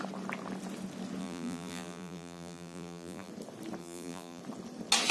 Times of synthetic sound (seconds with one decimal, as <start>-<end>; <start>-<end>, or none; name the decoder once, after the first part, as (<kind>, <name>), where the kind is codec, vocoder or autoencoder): 1.2-3.3 (vocoder, BigVGAN v2); 3.8-4.4